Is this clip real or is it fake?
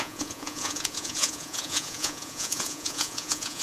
fake